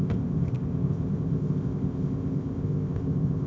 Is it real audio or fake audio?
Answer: fake